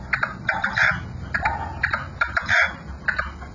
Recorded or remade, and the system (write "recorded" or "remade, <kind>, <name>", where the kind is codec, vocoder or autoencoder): recorded